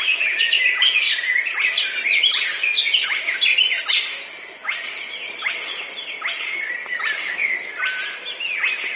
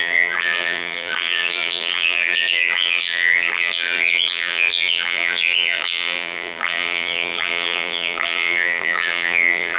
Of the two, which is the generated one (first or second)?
second